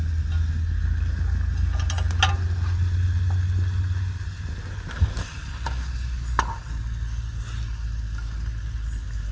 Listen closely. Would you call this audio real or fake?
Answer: real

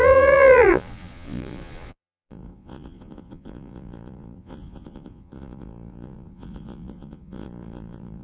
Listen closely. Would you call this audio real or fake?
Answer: fake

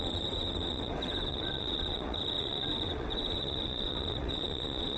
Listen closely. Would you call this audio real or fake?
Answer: fake